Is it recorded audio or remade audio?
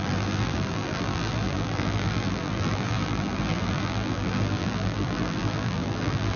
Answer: remade